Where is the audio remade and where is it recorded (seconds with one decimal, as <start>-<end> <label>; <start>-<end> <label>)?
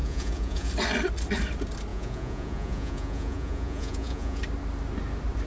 0.0-0.7 remade; 0.7-1.9 recorded; 1.9-4.4 remade; 4.4-5.5 recorded